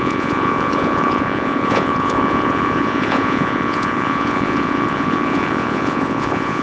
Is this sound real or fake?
fake